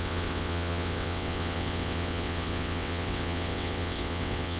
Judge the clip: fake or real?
fake